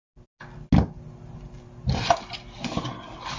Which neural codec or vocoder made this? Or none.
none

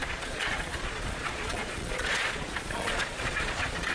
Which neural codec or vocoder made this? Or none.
vocoder, Vocos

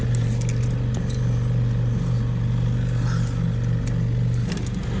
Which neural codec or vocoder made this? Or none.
none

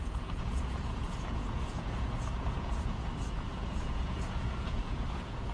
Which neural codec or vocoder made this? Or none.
vocoder, Vocos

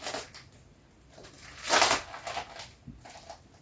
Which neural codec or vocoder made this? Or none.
none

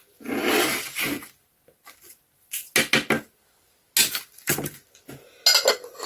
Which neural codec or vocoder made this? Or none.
none